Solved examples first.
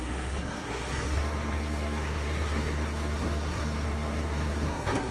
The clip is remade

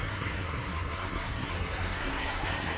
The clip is remade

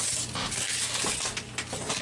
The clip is recorded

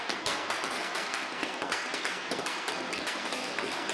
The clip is remade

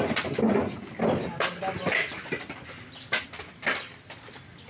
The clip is recorded